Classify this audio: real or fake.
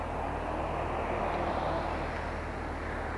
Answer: real